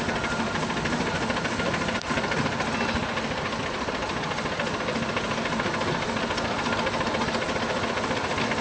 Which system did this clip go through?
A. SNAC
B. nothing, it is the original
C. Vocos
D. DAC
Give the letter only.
B